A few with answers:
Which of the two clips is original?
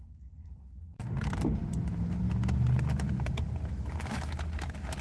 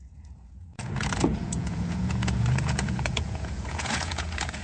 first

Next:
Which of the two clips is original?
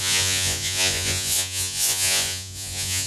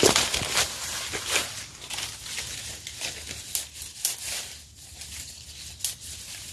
second